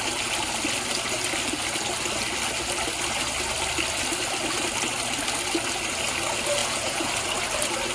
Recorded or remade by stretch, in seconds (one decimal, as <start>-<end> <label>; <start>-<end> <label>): 0.0-6.6 recorded; 6.6-7.1 remade; 7.1-7.9 recorded